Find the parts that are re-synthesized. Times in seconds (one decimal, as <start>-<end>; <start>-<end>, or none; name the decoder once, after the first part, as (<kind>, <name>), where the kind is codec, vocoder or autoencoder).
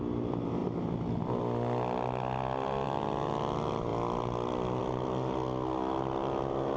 none